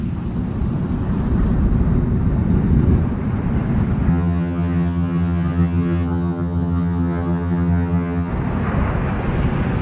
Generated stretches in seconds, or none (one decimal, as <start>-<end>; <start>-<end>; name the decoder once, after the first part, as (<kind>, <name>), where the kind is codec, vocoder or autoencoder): 4.1-8.3 (vocoder, HiFi-GAN)